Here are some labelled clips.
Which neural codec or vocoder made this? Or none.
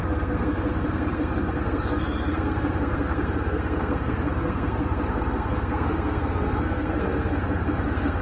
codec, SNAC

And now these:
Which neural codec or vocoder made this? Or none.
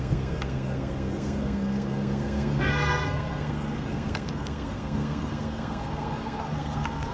codec, SNAC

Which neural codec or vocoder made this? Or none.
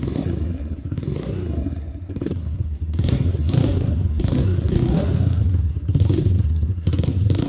codec, SNAC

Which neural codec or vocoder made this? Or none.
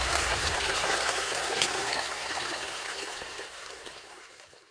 codec, SNAC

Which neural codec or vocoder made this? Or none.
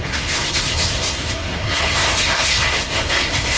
codec, SNAC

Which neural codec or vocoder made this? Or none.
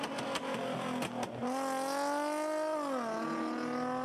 none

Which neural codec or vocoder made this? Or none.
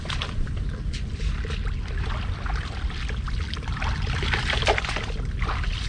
none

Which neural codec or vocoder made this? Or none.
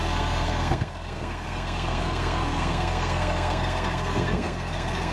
codec, SNAC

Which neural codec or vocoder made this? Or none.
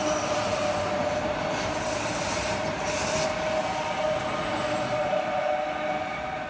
none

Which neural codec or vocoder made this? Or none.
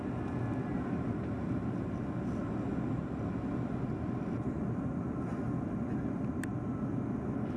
none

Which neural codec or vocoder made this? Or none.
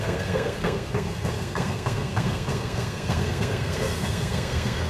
codec, SNAC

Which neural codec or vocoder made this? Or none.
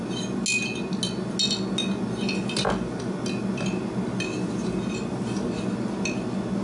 none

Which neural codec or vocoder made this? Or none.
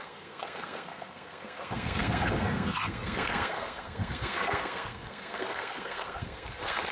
codec, SNAC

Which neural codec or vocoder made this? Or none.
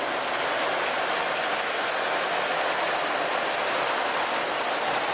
none